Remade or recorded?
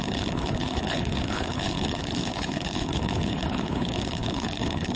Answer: remade